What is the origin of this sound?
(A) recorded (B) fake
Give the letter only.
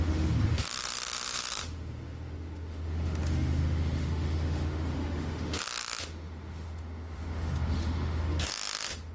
B